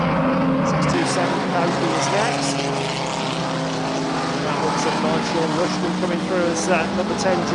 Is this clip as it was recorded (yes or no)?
yes